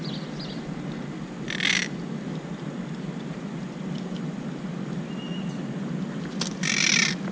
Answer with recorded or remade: recorded